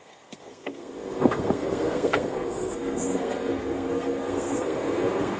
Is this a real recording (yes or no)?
no